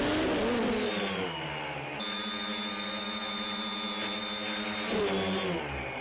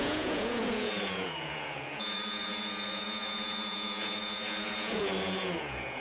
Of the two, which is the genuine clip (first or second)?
first